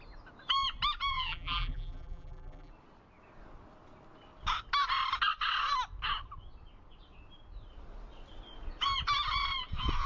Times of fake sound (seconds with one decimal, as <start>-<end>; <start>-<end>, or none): 1.1-2.7